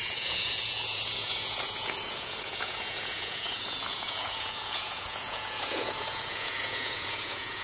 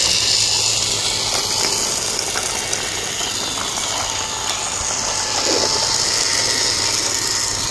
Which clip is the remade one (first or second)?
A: first